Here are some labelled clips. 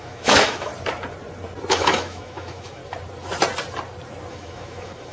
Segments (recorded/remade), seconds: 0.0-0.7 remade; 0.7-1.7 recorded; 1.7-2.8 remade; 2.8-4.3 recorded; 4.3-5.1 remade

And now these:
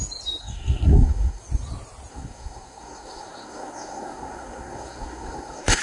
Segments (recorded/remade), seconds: 0.0-0.4 recorded; 0.4-1.4 remade; 1.4-2.1 recorded; 2.1-5.8 remade

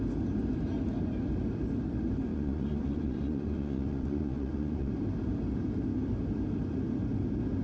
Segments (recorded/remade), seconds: 0.0-2.3 recorded; 2.3-4.9 remade; 4.9-7.6 recorded

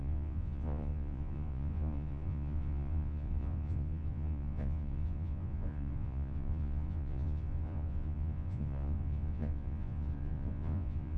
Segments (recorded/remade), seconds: 0.0-11.2 remade

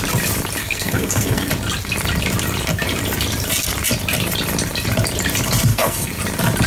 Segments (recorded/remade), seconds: 0.0-0.6 recorded; 0.6-1.5 remade; 1.5-5.7 recorded; 5.7-6.2 remade; 6.2-6.7 recorded